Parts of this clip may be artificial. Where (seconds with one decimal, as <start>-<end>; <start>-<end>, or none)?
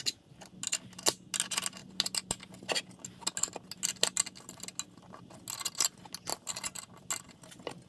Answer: none